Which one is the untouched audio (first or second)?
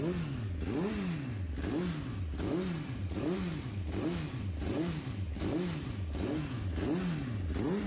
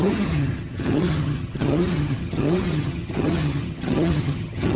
first